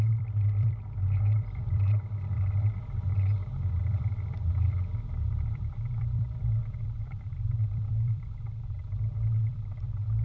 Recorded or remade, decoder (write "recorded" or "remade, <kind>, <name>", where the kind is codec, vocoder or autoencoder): remade, vocoder, BigVGAN v2